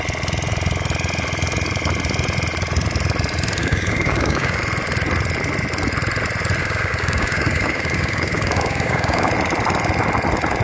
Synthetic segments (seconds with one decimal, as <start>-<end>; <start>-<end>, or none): 3.6-4.6; 6.6-9.3